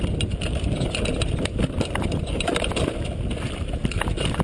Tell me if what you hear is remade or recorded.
recorded